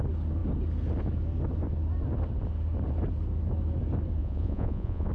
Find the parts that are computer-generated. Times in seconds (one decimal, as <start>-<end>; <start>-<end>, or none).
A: 4.2-5.1